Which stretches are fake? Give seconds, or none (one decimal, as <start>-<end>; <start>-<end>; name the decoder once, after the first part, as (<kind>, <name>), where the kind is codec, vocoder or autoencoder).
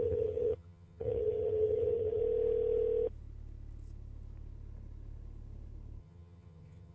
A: 0.0-2.2 (vocoder, HiFi-GAN); 6.0-6.9